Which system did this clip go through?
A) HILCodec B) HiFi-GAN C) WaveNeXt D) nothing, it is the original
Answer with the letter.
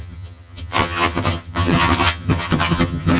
B